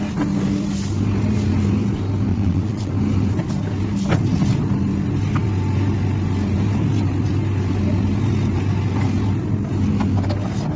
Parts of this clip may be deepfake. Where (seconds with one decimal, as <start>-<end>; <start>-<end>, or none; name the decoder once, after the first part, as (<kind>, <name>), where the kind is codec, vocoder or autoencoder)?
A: 2.3-2.9 (vocoder, WaveNeXt)